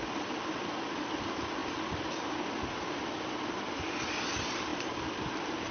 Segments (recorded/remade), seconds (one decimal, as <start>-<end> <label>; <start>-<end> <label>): 0.0-5.7 recorded